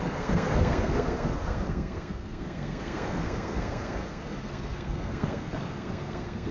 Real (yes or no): no